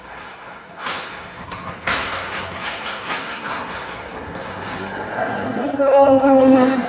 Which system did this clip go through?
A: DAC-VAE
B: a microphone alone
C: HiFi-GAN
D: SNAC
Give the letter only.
D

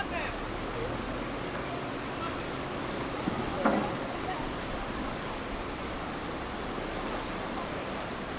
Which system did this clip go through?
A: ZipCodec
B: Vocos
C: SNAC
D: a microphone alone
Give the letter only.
D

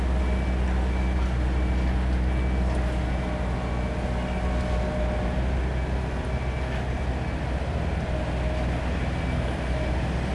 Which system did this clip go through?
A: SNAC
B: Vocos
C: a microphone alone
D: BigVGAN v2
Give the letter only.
C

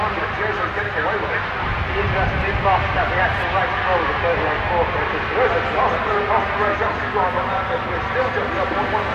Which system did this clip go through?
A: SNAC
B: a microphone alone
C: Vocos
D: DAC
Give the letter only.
B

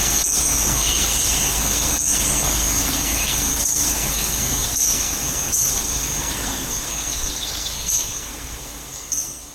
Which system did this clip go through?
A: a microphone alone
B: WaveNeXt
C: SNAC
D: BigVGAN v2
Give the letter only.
C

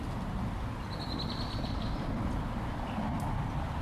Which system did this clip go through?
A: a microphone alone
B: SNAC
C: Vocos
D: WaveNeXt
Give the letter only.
A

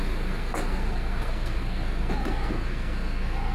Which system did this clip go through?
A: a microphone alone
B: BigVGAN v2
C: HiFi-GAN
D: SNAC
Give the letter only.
D